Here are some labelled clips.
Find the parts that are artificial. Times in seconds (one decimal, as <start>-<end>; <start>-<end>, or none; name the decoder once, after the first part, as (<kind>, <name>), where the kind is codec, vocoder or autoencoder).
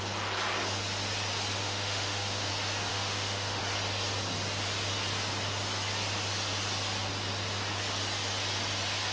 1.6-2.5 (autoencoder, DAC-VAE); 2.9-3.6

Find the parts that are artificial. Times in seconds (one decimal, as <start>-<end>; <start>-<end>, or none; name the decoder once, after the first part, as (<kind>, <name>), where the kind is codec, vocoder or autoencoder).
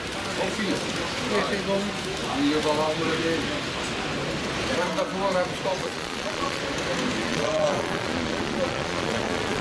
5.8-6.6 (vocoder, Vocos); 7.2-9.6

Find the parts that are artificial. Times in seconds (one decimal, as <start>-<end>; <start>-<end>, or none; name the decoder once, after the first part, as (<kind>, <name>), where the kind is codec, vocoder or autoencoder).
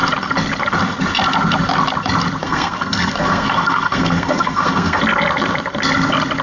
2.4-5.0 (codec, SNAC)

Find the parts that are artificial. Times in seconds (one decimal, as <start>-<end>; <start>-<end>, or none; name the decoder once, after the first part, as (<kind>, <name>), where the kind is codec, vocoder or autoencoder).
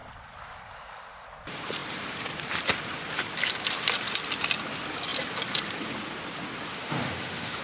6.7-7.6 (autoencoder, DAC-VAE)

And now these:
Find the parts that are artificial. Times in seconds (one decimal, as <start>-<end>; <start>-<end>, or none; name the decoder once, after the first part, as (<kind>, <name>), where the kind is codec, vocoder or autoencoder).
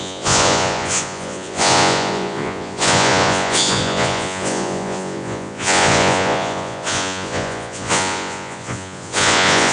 0.0-9.7 (vocoder, Vocos)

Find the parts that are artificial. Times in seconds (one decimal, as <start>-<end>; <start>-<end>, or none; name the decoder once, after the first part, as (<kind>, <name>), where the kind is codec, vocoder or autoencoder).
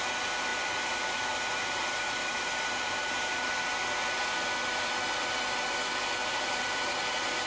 0.5-3.6 (vocoder, BigVGAN v2); 6.2-7.0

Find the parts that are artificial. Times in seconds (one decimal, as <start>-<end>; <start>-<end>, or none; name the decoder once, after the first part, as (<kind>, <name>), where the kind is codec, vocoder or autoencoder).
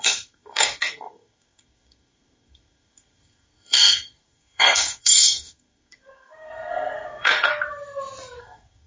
0.0-7.5 (codec, SNAC); 8.4-8.9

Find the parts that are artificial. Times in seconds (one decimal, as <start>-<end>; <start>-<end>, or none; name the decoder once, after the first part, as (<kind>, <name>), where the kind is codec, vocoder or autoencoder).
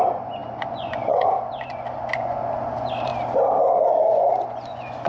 0.0-3.1 (vocoder, Vocos); 4.1-5.1